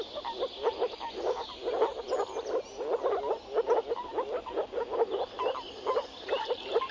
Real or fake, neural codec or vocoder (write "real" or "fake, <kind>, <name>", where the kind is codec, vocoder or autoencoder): real